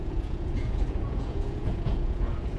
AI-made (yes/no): yes